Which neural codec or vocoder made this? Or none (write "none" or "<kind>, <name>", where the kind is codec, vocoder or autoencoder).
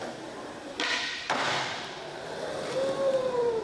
vocoder, BigVGAN v2